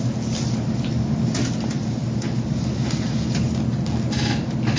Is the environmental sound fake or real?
real